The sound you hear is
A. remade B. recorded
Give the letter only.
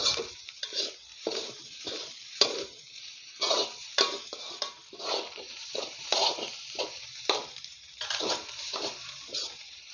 A